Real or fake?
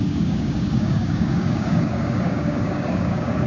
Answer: fake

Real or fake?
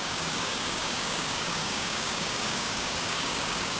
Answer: fake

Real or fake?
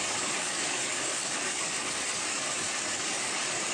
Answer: fake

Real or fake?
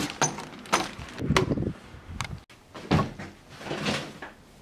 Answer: real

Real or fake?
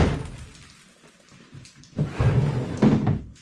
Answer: real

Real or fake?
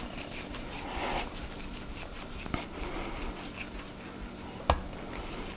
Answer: real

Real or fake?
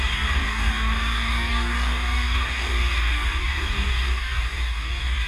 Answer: fake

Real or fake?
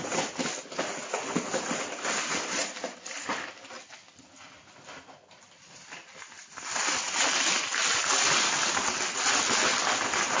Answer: real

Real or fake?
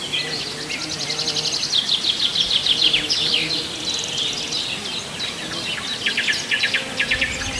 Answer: real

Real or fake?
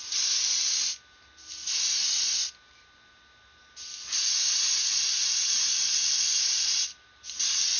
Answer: real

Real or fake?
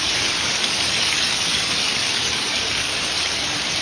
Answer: fake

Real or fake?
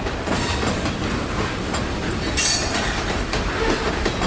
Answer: real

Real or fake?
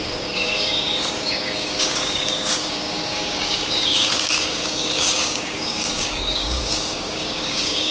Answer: fake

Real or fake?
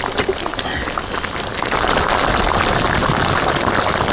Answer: real